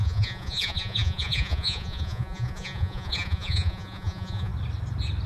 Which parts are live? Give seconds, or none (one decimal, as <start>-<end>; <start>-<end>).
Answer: 4.5-5.3

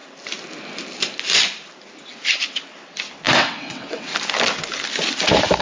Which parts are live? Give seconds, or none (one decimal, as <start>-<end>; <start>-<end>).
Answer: 0.0-3.4; 4.1-5.6

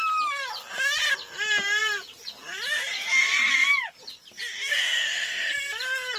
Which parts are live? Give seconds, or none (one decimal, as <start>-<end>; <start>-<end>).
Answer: 0.0-4.7; 5.5-6.2

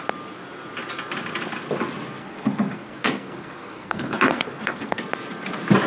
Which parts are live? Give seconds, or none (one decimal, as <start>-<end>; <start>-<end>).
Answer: 0.0-2.2; 5.0-5.9

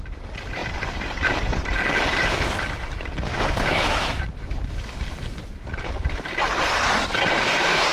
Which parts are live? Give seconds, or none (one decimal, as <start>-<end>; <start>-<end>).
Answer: 0.0-3.3; 4.2-7.9

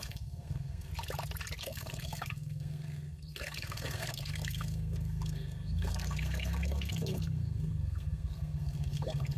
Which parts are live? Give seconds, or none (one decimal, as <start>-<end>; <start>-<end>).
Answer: 0.9-1.6

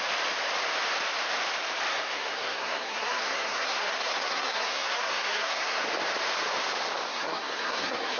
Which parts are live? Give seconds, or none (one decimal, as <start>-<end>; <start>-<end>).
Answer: 0.0-1.9; 5.8-7.1